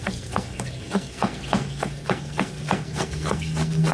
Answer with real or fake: fake